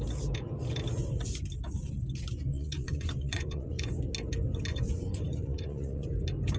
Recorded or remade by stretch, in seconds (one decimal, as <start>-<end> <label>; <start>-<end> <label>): 0.0-2.5 recorded; 2.5-4.0 remade; 4.0-4.7 recorded; 4.7-6.1 remade; 6.1-6.6 recorded